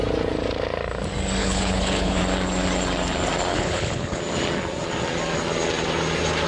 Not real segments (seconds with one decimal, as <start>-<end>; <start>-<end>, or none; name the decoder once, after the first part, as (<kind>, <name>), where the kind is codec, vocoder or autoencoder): 1.4-2.2 (codec, HILCodec); 3.5-4.2

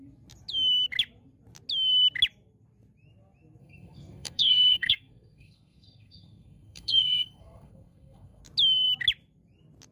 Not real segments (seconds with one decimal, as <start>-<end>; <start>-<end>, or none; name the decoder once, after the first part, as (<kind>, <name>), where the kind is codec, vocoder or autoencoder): 3.6-8.4 (codec, SNAC)

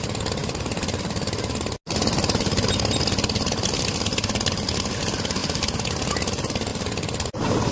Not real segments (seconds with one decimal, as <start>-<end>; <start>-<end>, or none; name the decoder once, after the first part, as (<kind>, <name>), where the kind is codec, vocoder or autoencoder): 5.4-6.1 (vocoder, BigVGAN v2)

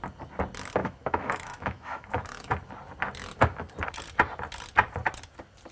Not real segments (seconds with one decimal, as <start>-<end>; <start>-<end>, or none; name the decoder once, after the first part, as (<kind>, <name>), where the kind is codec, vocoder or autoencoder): 0.8-2.5 (autoencoder, DAC-VAE)

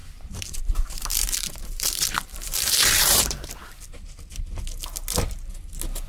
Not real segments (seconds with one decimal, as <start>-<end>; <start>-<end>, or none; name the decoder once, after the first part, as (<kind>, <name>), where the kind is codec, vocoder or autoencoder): 0.0-3.5 (vocoder, BigVGAN v2)

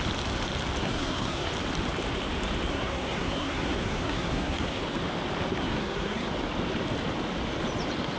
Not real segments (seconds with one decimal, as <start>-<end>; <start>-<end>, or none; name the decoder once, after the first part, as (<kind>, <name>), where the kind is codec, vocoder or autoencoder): 0.8-1.5 (codec, SNAC); 2.7-4.8; 5.6-6.3

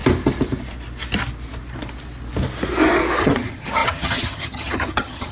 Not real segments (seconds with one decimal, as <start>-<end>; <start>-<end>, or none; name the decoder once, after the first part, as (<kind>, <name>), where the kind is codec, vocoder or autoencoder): 3.2-5.3 (vocoder, HiFi-GAN)

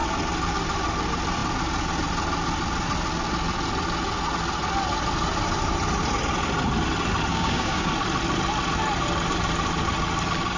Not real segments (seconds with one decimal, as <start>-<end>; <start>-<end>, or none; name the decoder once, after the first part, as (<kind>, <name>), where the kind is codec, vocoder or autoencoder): 7.3-7.9 (codec, DAC)